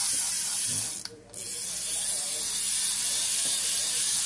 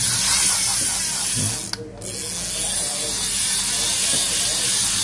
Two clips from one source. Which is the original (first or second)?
second